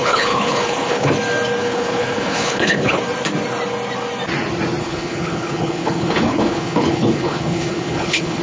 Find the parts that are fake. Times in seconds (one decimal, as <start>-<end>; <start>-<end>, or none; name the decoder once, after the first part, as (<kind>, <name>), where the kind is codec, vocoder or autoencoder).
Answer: 0.0-1.1 (codec, HILCodec); 1.6-3.0; 4.8-8.4